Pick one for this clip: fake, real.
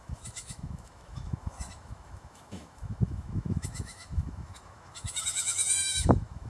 fake